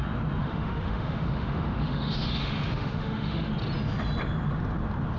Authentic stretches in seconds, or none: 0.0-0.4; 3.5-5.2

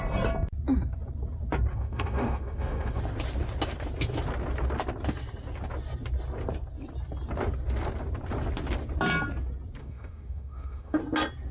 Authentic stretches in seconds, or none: 0.0-1.7; 3.0-9.8; 11.0-11.5